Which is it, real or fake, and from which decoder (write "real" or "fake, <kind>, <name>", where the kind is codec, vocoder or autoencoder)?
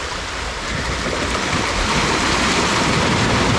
real